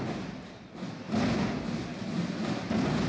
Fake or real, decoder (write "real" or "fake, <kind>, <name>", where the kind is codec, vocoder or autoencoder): real